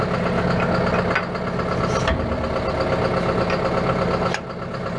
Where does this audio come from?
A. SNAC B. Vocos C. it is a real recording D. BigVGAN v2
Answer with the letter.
C